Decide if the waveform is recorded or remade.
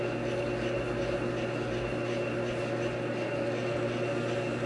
recorded